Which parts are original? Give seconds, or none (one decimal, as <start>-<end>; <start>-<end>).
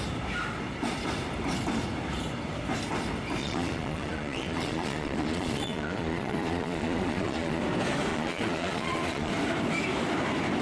0.0-3.4; 7.6-8.1; 9.3-10.6